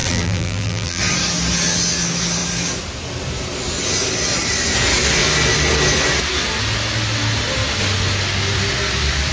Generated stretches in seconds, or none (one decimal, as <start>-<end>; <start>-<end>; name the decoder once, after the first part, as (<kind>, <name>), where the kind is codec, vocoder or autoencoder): 0.0-1.0 (vocoder, BigVGAN v2)